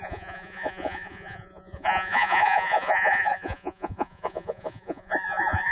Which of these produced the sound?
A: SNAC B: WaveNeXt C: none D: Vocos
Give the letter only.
D